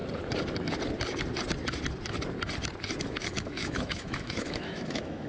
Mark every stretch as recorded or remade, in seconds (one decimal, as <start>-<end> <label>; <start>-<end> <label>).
0.0-3.0 recorded; 3.0-5.3 remade